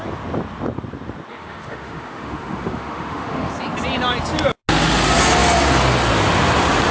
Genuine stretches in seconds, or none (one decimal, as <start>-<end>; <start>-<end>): 0.0-1.3; 3.5-6.9